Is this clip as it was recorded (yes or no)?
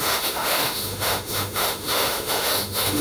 no